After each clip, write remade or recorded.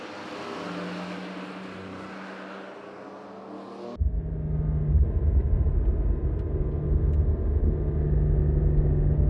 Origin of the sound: recorded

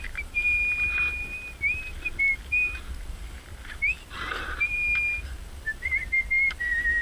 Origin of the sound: recorded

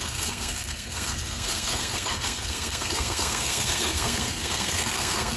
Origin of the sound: remade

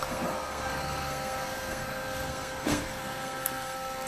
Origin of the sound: remade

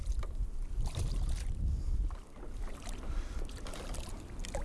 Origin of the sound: recorded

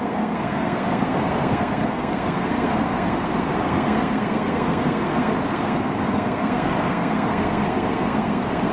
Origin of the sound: remade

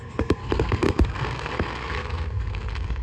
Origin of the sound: remade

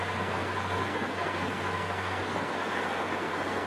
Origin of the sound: remade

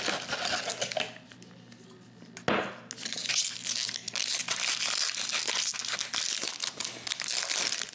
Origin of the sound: recorded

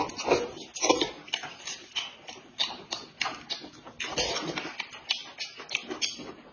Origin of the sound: recorded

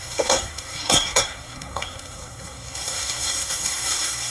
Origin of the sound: remade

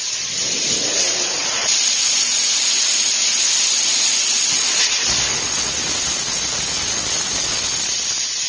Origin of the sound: recorded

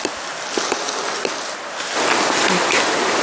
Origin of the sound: recorded